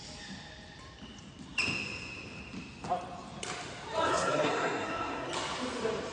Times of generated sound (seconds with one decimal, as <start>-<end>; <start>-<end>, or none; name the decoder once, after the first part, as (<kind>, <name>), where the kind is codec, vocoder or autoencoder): 4.1-5.3 (codec, SNAC)